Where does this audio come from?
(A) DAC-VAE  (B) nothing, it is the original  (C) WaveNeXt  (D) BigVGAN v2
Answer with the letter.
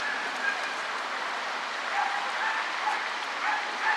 D